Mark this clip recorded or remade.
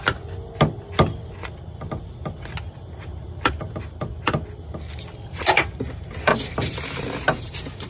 recorded